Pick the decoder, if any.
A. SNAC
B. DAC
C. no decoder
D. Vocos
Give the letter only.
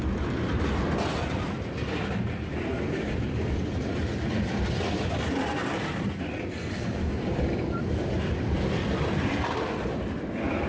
C